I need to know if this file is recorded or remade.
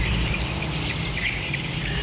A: recorded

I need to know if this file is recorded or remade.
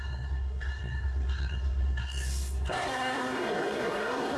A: remade